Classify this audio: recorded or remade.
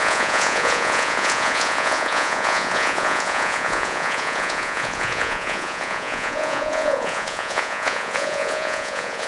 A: remade